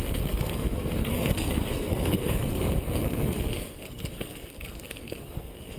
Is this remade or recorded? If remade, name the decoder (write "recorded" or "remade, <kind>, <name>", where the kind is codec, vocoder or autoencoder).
remade, codec, SNAC